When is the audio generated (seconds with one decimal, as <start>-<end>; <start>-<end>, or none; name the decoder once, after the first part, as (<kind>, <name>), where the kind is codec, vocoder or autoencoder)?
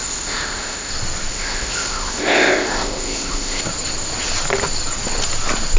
0.0-0.9 (codec, ZipCodec); 1.3-3.6